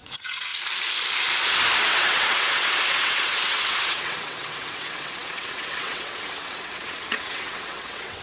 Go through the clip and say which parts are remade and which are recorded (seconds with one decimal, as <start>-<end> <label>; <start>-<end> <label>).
0.0-0.5 remade; 0.5-1.8 recorded; 1.8-8.2 remade

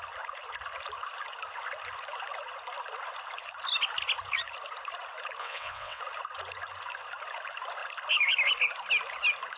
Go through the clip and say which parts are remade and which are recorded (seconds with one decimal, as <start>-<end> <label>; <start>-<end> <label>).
0.0-5.4 recorded; 5.4-6.0 remade; 6.0-9.6 recorded

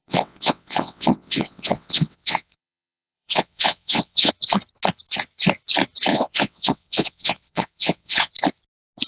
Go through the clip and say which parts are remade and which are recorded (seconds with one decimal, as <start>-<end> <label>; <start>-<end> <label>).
0.0-4.3 remade; 4.3-6.1 recorded; 6.1-8.3 remade; 8.3-9.1 recorded

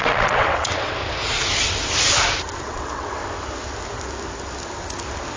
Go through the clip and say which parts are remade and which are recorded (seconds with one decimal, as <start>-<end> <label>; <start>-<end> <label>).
0.0-1.0 remade; 1.0-2.6 recorded; 2.6-3.2 remade; 3.2-5.4 recorded

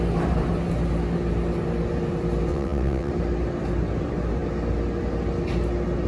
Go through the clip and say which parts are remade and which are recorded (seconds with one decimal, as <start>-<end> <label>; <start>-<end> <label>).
0.0-2.5 recorded; 2.5-3.1 remade; 3.1-6.1 recorded

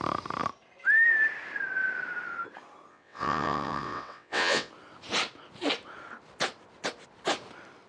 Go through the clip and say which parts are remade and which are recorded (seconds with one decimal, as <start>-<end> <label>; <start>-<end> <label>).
0.0-2.9 recorded; 2.9-4.7 remade; 4.7-7.9 recorded

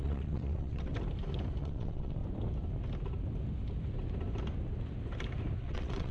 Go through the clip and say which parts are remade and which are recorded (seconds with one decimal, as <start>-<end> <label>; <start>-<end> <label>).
0.0-0.9 remade; 0.9-1.6 recorded; 1.6-2.2 remade; 2.2-5.6 recorded; 5.6-6.1 remade

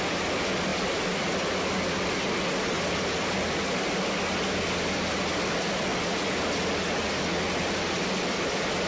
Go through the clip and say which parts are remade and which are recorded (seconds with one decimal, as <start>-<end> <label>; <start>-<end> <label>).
0.0-8.9 recorded